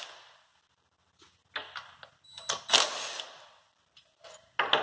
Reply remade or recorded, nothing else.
recorded